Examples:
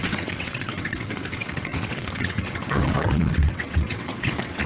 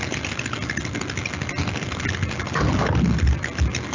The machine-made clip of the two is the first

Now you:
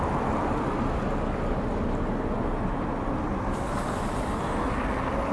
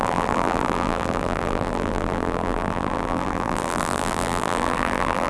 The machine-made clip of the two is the second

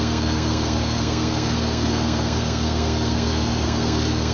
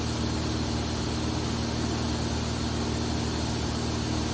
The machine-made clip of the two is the first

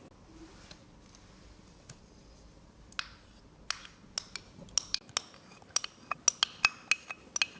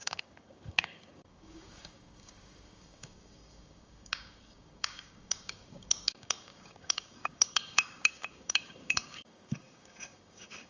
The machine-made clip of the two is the second